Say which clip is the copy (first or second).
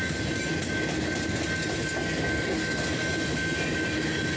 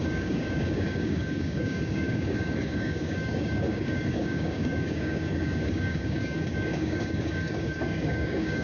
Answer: second